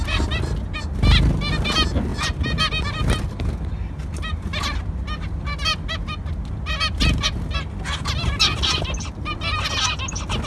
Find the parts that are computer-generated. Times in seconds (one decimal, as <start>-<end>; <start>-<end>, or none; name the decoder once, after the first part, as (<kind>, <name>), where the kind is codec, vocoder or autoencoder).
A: none